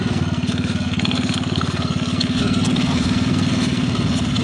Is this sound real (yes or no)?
no